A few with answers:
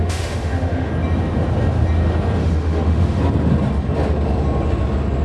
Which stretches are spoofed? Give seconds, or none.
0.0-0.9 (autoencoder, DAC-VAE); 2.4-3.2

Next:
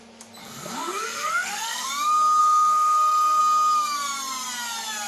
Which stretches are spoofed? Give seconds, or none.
0.4-1.9 (codec, SNAC); 2.4-3.4

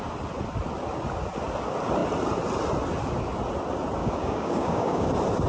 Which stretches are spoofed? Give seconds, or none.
4.0-5.1 (codec, DAC)

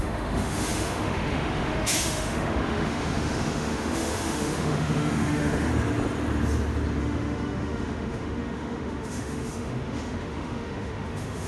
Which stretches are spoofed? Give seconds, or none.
0.0-5.7 (autoencoder, DAC-VAE); 7.0-11.5

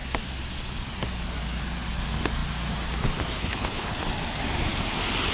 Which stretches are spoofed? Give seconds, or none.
3.4-4.0 (codec, HILCodec)

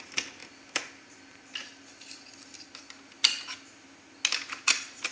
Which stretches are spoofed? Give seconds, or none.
none

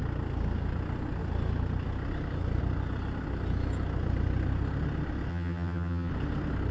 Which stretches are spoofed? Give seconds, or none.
5.3-6.1 (vocoder, HiFi-GAN)

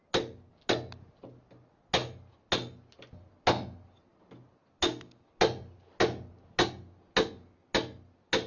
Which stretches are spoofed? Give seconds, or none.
none